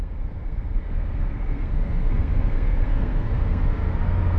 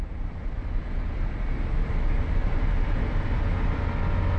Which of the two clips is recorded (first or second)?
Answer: second